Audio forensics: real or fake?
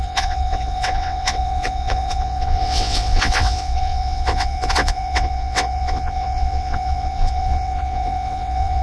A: fake